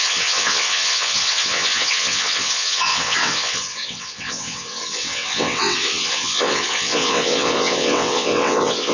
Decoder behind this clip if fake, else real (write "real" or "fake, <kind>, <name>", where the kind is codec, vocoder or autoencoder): fake, vocoder, WaveNeXt